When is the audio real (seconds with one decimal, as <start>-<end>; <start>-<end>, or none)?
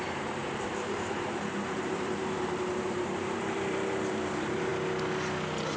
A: 4.7-5.8